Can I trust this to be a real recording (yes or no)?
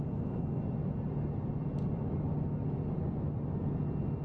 yes